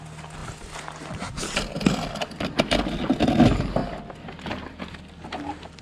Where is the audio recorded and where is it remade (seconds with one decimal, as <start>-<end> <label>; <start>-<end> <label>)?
0.0-5.8 recorded